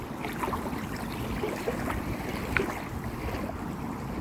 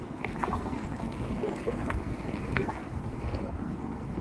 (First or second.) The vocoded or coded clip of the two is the second